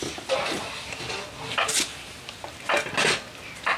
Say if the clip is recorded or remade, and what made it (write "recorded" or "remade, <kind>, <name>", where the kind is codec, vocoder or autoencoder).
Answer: recorded